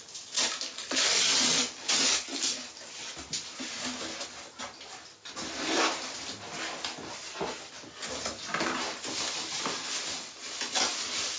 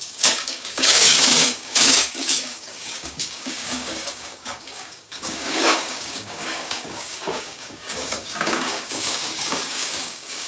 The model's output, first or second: second